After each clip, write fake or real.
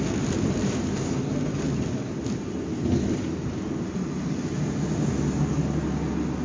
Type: real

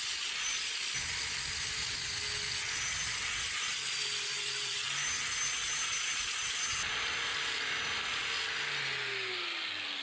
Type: real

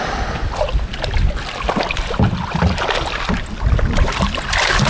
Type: real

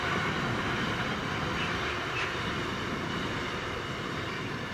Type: real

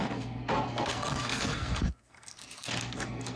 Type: fake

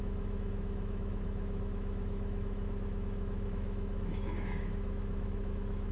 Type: fake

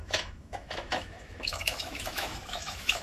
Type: fake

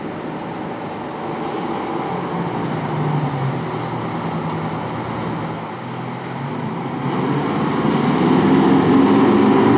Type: real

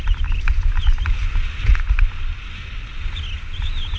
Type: real